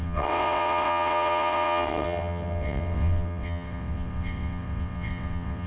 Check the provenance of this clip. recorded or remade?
remade